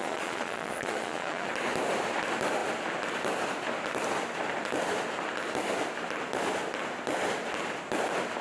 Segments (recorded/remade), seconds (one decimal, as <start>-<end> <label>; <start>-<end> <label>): 0.0-1.5 remade; 1.5-8.4 recorded